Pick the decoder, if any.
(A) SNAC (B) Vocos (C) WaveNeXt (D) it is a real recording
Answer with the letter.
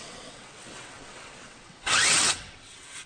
C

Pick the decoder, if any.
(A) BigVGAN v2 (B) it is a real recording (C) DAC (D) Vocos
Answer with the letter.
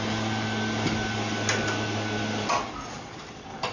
B